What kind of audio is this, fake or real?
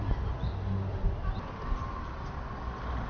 real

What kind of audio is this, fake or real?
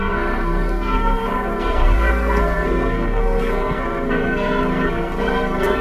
fake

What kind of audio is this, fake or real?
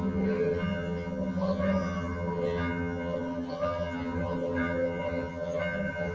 fake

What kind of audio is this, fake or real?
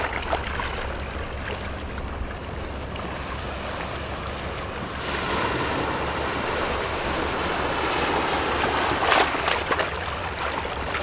real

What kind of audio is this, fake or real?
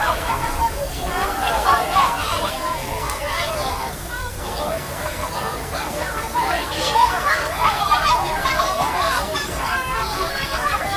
fake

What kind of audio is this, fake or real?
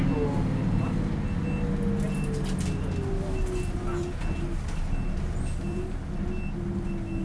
real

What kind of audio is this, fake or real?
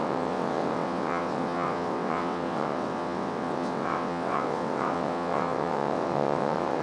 fake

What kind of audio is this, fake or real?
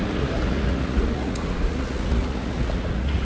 fake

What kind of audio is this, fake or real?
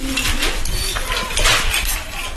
real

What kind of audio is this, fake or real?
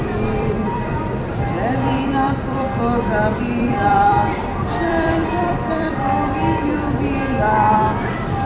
fake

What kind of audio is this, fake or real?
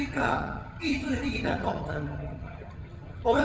fake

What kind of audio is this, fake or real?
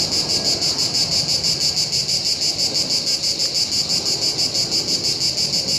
real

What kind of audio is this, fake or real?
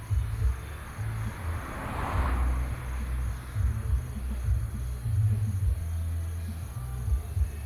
real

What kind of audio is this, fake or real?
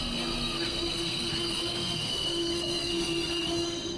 fake